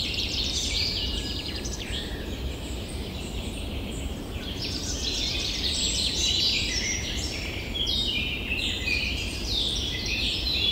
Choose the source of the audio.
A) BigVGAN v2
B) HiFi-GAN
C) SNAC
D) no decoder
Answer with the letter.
A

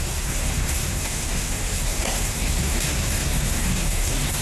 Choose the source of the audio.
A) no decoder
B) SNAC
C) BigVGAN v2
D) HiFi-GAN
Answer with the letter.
B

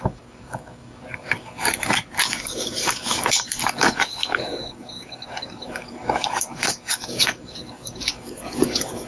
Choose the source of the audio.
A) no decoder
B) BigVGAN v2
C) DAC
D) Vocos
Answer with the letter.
C